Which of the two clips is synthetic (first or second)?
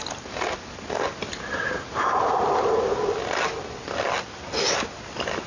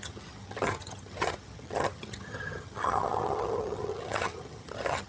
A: second